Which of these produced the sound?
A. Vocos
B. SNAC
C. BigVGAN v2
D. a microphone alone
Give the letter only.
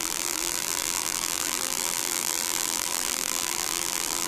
C